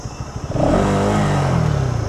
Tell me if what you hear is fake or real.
real